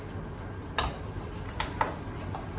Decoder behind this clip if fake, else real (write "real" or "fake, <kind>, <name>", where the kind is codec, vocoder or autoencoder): real